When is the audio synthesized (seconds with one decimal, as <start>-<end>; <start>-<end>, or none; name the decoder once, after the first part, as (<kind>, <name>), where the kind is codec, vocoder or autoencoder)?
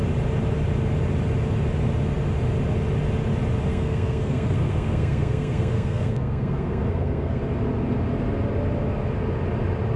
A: 3.7-7.4 (codec, SNAC)